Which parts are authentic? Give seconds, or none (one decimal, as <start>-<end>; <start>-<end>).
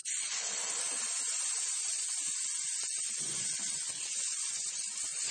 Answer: 0.0-3.2